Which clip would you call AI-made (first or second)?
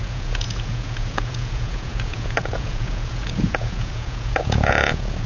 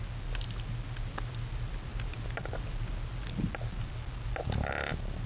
first